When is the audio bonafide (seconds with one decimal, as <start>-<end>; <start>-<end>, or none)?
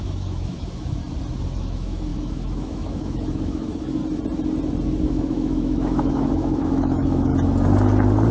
1.0-1.6; 4.0-5.0; 7.3-8.3